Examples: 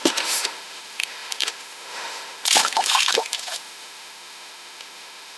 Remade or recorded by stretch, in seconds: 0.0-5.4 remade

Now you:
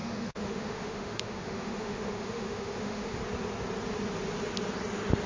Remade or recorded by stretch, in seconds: 0.0-3.2 remade; 3.2-5.3 recorded

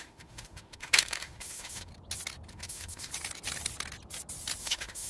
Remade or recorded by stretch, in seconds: 0.0-1.9 remade; 1.9-2.5 recorded; 2.5-3.1 remade; 3.1-4.6 recorded; 4.6-5.1 remade